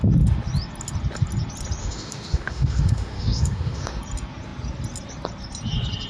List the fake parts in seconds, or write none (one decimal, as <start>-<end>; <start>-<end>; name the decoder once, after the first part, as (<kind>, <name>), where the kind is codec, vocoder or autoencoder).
1.8-4.0 (autoencoder, DAC-VAE)